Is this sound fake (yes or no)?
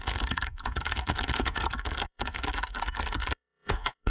yes